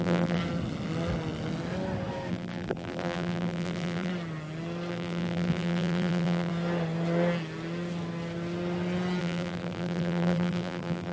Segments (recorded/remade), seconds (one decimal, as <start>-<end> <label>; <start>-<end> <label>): 0.0-0.4 remade; 0.4-2.3 recorded; 2.3-4.1 remade; 4.1-4.9 recorded; 4.9-6.5 remade; 6.5-9.2 recorded; 9.2-11.1 remade